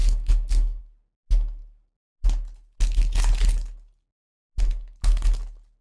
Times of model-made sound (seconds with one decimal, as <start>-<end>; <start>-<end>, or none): 0.0-0.8